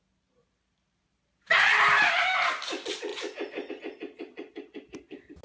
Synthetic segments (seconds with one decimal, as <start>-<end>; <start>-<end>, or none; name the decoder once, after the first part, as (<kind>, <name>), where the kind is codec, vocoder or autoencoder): 0.4-2.2 (vocoder, BigVGAN v2)